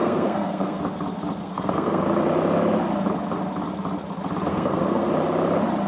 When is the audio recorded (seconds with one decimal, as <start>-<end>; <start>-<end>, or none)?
0.8-1.4; 2.0-4.5; 5.1-5.9